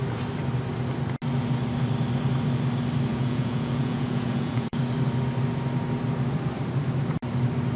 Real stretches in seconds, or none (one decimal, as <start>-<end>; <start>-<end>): 0.0-3.1; 4.8-7.8